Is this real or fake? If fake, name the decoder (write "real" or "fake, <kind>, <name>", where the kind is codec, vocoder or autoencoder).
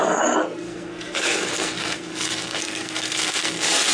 fake, codec, SNAC